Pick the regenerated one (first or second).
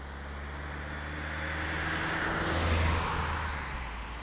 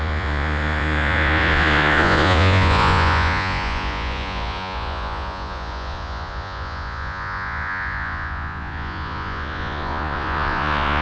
second